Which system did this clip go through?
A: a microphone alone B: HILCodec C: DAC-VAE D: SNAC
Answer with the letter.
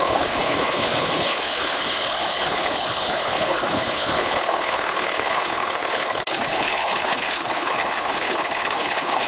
B